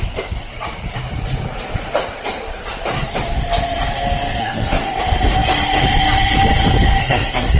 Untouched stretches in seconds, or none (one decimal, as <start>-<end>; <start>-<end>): 0.0-4.4; 5.0-7.0